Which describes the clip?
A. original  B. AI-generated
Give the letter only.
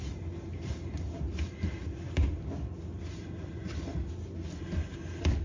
A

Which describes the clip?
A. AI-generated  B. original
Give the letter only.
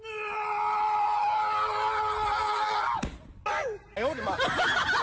B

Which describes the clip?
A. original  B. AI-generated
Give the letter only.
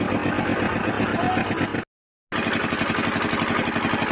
A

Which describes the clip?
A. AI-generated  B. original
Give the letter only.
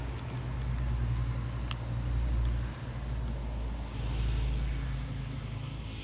B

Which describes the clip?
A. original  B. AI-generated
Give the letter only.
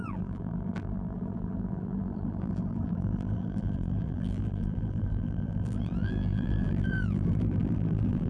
B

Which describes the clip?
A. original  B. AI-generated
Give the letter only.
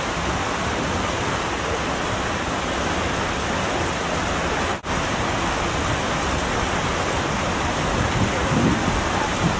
A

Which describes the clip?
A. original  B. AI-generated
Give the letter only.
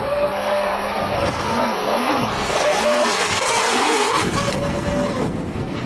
B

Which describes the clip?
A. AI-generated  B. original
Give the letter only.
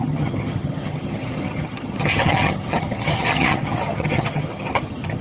A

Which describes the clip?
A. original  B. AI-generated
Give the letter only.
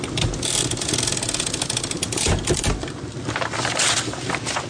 A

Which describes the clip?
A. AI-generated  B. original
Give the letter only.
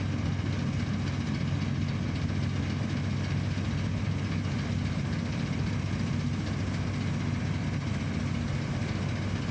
B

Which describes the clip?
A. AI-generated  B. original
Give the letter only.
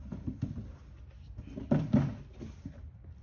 B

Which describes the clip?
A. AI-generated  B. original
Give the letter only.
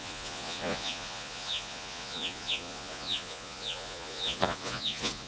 A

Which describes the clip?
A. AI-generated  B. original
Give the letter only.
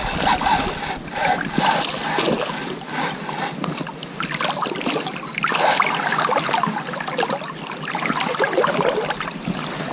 B